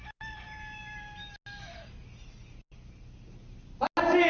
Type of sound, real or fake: real